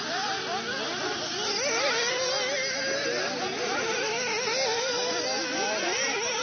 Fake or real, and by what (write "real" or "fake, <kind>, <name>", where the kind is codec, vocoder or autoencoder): real